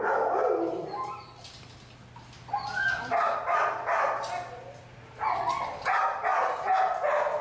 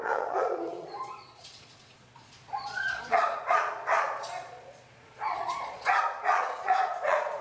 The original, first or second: first